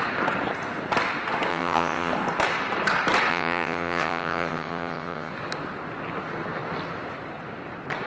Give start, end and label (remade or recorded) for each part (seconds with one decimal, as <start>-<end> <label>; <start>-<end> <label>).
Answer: 0.0-1.5 recorded; 1.5-2.1 remade; 2.1-3.3 recorded; 3.3-5.3 remade; 5.3-8.1 recorded